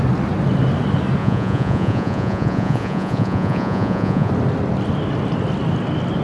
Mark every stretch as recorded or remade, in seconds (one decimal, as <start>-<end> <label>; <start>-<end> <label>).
0.0-1.2 recorded; 1.2-4.3 remade; 4.3-6.2 recorded